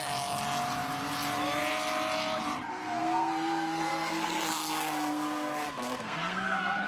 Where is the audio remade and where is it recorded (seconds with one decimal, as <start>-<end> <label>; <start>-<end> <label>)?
0.0-2.7 recorded; 2.7-6.9 remade